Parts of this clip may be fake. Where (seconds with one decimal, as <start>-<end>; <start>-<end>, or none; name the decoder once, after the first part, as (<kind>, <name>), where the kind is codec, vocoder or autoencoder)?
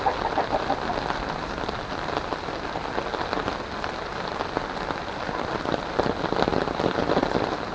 none